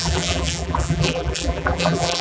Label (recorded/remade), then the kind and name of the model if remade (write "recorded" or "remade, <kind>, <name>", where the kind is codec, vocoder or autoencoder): remade, vocoder, BigVGAN v2